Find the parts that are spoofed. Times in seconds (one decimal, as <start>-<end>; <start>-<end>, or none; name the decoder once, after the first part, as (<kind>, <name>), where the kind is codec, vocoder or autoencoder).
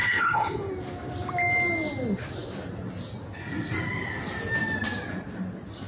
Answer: 0.0-0.7 (codec, HILCodec)